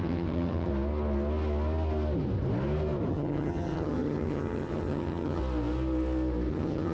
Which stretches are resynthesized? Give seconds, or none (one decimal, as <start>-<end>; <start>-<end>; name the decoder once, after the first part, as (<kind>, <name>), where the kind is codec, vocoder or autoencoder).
0.0-0.7 (vocoder, HiFi-GAN); 3.1-5.4; 6.5-6.9